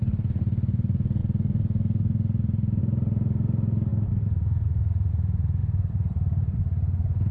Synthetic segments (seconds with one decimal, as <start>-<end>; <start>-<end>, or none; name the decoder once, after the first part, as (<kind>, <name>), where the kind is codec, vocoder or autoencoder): 5.6-6.6 (vocoder, BigVGAN v2)